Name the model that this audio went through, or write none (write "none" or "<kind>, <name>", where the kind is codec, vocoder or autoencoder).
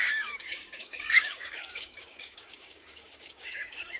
codec, DAC